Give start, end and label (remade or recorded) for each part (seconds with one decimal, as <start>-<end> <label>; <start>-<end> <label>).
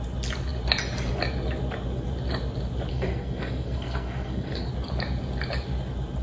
0.0-2.9 recorded; 2.9-4.7 remade; 4.7-6.2 recorded